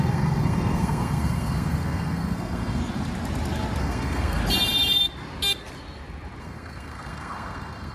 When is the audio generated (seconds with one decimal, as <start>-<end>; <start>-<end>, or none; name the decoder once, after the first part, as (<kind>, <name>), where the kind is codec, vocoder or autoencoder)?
0.0-2.8 (codec, SNAC); 3.8-4.4; 6.4-7.9